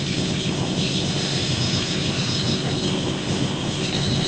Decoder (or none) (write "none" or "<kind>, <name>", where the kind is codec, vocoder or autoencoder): codec, SNAC